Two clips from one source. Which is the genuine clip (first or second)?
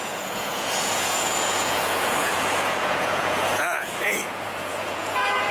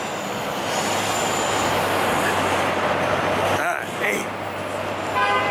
second